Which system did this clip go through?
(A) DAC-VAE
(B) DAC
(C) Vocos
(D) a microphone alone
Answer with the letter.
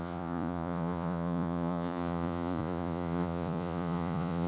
C